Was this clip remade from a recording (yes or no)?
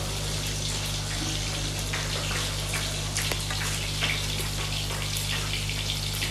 no